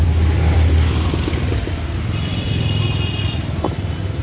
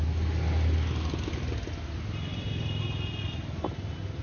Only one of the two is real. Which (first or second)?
second